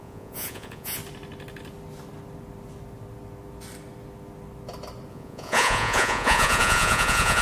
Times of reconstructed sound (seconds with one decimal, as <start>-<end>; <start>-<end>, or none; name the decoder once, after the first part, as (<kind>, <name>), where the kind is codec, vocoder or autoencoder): 0.0-1.0 (vocoder, Vocos); 5.1-7.4